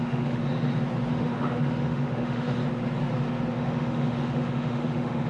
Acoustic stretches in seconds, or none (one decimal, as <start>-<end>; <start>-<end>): 0.4-1.1; 2.6-3.5